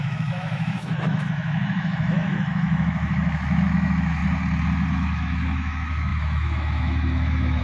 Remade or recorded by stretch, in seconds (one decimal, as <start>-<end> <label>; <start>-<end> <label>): 0.0-4.2 remade; 4.2-4.9 recorded; 4.9-7.6 remade